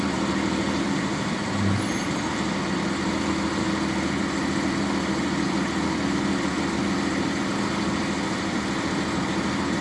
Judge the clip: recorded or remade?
recorded